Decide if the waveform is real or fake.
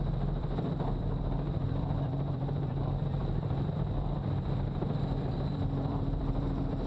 fake